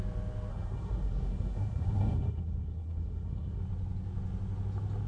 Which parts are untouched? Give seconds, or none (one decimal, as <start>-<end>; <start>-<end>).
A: 0.0-0.5; 3.6-5.1

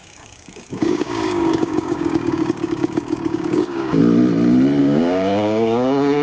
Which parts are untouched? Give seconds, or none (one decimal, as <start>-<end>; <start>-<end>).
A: 4.0-4.8

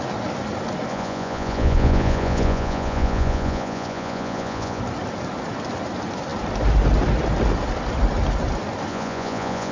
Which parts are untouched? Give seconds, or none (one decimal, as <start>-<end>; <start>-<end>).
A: 0.0-0.9; 4.8-8.9